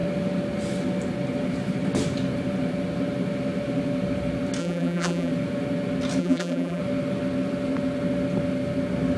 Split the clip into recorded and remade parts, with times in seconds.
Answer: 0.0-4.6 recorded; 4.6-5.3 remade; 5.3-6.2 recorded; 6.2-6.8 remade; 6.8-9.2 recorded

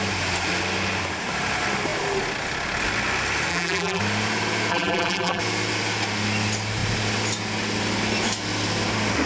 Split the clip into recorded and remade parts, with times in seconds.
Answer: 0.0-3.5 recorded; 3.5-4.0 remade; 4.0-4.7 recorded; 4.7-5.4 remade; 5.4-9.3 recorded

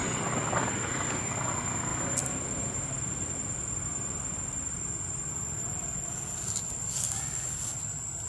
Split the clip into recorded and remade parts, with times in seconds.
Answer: 0.0-0.4 recorded; 0.4-1.3 remade; 1.3-1.9 recorded; 1.9-5.6 remade; 5.6-8.3 recorded

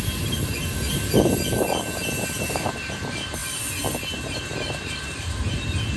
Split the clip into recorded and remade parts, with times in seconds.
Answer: 0.0-6.0 remade

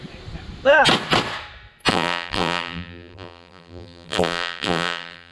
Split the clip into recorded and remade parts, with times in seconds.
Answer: 0.0-1.9 recorded; 1.9-5.3 remade